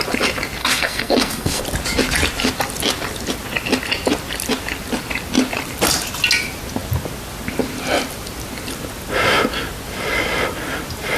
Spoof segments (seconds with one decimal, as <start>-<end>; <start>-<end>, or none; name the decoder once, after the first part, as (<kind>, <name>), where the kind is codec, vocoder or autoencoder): 0.6-1.6 (codec, SNAC)